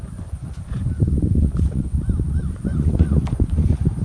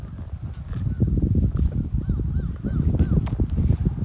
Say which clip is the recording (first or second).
second